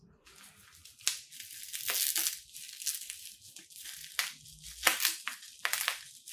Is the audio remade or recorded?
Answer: recorded